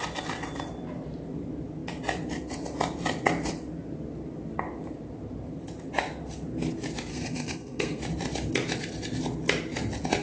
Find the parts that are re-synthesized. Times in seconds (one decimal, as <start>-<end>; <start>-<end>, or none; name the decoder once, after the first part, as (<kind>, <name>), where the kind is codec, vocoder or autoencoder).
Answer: 7.1-8.0 (codec, SNAC)